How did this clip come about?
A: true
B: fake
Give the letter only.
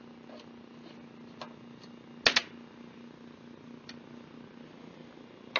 A